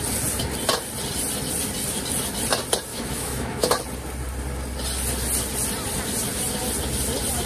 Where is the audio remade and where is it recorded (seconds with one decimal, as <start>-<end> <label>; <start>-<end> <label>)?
0.0-2.9 recorded; 2.9-3.7 remade; 3.7-7.5 recorded